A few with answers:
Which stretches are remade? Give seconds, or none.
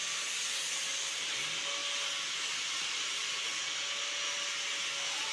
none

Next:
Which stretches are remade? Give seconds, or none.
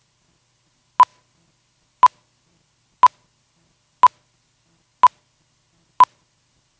none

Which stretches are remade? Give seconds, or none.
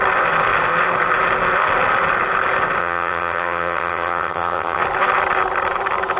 2.8-4.8 (vocoder, HiFi-GAN)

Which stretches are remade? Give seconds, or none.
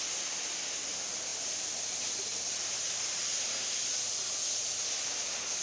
2.3-3.7 (vocoder, BigVGAN v2)